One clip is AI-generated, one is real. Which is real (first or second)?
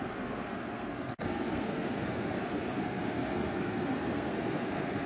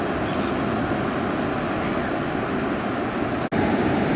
second